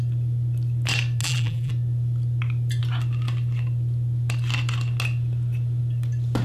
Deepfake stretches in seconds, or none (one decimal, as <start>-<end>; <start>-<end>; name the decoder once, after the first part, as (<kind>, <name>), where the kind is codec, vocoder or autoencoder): 1.2-1.7 (vocoder, BigVGAN v2)